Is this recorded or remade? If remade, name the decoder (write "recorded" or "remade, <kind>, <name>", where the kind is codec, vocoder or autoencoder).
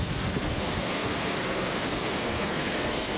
remade, codec, SNAC